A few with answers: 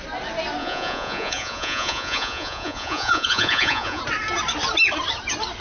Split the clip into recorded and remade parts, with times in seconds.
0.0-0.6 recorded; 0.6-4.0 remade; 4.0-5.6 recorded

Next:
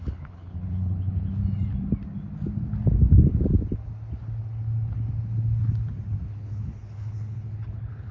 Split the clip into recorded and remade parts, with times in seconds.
0.0-1.4 remade; 1.4-6.3 recorded; 6.3-8.1 remade

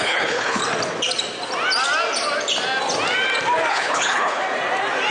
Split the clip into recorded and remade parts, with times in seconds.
0.0-0.6 remade; 0.6-3.7 recorded; 3.7-4.4 remade; 4.4-5.1 recorded

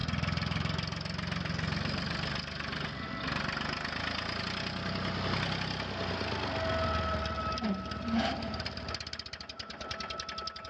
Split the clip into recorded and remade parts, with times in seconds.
0.0-10.7 recorded